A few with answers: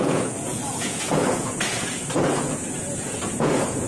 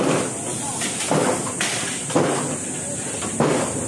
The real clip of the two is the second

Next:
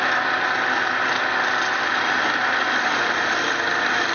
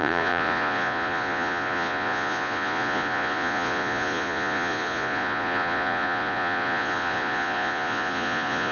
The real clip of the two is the first